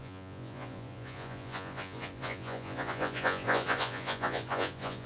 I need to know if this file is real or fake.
fake